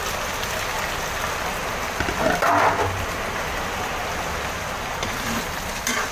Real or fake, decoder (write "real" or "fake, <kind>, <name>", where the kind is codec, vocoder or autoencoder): real